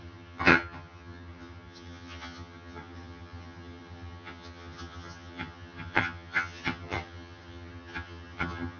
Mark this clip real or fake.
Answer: fake